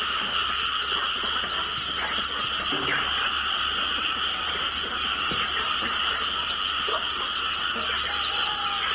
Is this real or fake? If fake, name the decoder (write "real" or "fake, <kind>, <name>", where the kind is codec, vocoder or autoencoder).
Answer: real